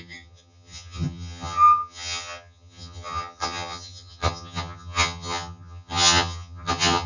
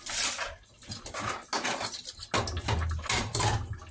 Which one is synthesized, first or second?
first